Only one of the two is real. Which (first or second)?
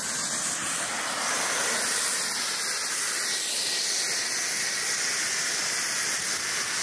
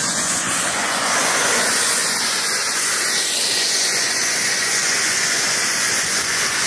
first